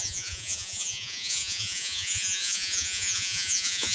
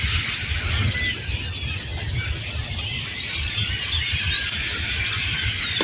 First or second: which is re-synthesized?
first